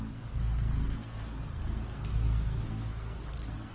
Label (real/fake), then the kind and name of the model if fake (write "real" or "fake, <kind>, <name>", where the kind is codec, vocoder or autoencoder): fake, codec, SNAC